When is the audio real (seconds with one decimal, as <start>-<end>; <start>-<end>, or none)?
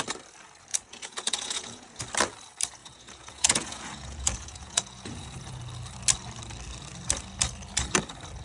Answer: 0.0-0.7; 2.0-2.8; 5.6-8.4